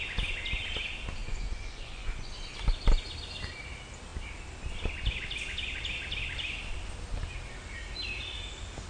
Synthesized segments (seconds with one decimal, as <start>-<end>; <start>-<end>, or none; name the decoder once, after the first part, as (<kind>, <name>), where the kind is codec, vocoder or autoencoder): 1.2-2.3 (vocoder, Vocos)